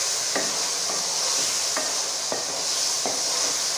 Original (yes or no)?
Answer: yes